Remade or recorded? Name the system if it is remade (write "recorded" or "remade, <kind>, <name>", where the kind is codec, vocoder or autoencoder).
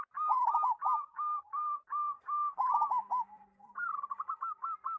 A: remade, vocoder, BigVGAN v2